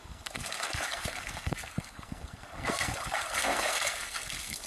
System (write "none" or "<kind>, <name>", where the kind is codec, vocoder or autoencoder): codec, SNAC